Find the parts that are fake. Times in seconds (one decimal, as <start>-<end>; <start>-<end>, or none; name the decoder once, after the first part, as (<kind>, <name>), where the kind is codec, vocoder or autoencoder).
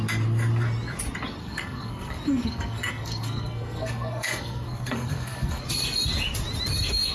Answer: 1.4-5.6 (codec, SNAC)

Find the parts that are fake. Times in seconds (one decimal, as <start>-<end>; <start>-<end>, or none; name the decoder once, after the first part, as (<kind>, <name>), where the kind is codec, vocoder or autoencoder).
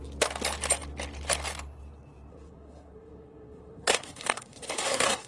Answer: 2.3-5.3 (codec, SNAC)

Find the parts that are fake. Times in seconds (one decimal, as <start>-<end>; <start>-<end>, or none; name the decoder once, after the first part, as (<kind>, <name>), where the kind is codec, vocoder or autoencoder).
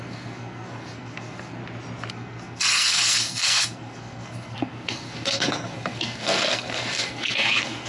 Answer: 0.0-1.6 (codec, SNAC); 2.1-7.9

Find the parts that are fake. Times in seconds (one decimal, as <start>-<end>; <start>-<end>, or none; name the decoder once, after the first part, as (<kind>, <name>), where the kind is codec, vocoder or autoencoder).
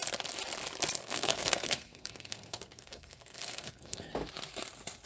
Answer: 1.0-4.1 (codec, SNAC)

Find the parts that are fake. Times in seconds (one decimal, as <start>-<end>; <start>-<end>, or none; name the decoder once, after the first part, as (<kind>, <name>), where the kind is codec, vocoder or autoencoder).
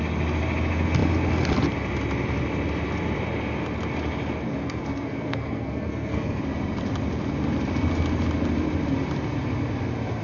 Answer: 4.6-6.4 (codec, SNAC)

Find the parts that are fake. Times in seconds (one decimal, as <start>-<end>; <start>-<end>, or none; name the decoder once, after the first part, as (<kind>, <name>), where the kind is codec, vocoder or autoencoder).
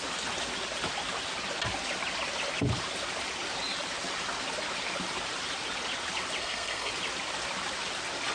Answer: 6.4-6.9 (codec, SNAC)